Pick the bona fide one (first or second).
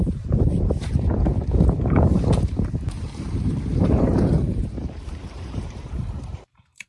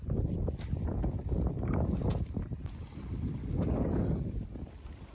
second